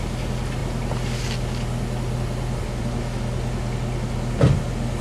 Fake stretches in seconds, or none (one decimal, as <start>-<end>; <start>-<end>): none